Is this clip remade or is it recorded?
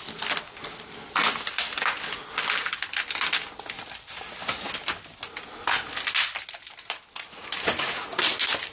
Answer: recorded